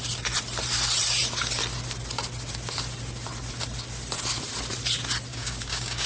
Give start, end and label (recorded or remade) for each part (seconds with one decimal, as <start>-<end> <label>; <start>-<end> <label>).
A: 0.0-5.3 recorded; 5.3-6.1 remade